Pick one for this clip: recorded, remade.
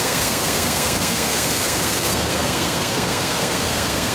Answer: remade